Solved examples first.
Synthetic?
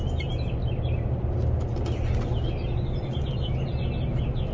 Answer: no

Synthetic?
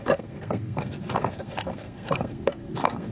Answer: yes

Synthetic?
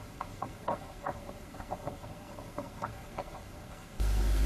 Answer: yes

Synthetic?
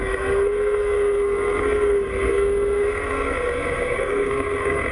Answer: yes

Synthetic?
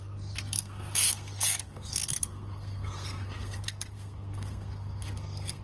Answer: yes